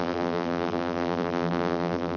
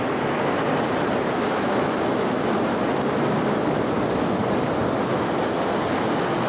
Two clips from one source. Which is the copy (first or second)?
first